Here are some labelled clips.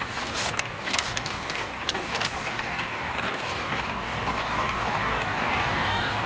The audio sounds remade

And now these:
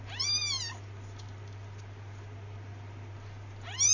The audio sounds recorded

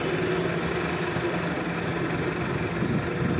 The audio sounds recorded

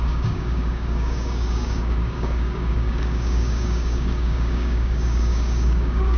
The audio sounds remade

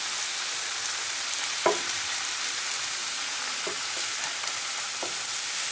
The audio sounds recorded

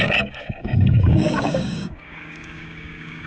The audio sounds remade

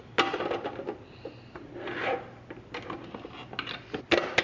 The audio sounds recorded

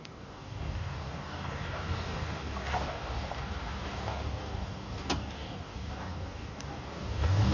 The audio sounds remade